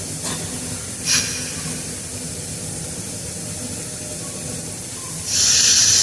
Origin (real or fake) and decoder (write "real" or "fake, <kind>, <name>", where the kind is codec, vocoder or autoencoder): real